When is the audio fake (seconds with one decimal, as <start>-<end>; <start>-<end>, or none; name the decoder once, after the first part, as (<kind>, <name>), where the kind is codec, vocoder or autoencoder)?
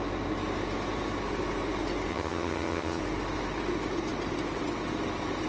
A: 2.1-3.0 (vocoder, HiFi-GAN)